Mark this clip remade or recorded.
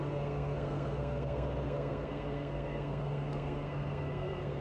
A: remade